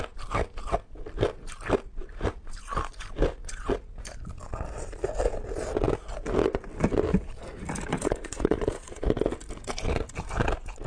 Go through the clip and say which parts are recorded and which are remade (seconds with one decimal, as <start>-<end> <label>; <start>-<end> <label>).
0.0-7.9 recorded; 7.9-9.0 remade; 9.0-10.9 recorded